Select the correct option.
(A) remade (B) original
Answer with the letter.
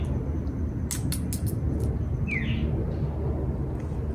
B